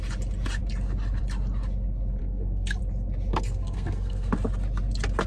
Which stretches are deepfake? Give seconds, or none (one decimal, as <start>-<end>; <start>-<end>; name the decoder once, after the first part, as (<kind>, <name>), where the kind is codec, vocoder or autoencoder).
2.2-2.8 (codec, SNAC); 3.3-4.3